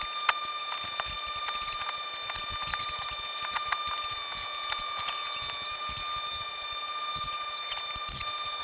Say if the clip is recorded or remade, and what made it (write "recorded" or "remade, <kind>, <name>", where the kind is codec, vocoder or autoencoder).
recorded